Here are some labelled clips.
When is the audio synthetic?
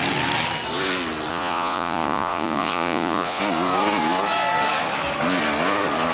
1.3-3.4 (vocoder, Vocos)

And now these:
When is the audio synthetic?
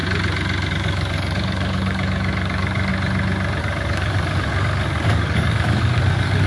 0.7-2.9 (codec, DAC); 3.6-6.5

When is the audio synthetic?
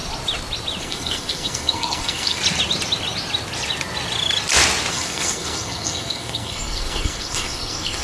0.8-2.4 (codec, SNAC); 4.9-8.0